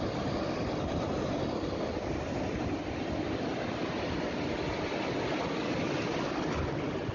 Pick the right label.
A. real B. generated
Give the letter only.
A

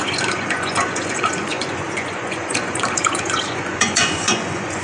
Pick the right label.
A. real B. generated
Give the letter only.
B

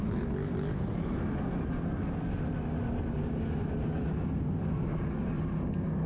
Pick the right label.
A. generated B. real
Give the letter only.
B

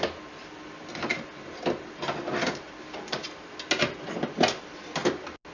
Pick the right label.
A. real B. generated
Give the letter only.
A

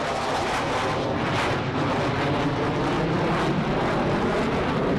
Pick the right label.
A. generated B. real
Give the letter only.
B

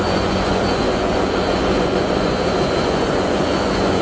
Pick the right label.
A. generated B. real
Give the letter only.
A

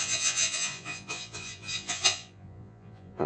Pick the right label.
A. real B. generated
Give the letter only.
B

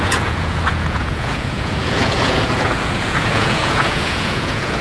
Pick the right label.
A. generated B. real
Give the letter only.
A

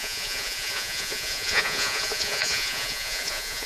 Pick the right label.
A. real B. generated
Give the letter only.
B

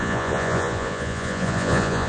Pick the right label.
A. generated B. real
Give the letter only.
A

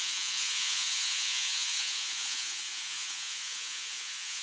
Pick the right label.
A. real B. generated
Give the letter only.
B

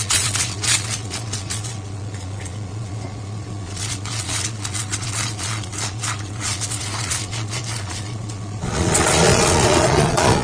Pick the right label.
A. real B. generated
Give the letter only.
B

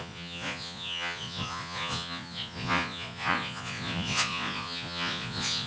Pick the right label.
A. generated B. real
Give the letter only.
A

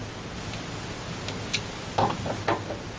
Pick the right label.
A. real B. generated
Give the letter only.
A